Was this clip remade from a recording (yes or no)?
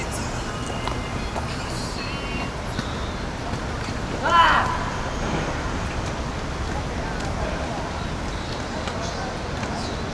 no